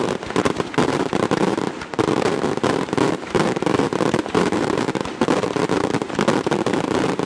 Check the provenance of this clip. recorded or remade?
remade